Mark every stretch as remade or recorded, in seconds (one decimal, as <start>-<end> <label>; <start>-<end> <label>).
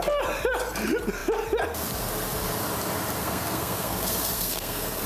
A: 0.0-3.2 recorded; 3.2-5.1 remade